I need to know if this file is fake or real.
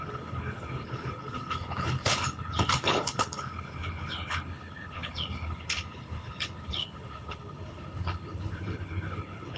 fake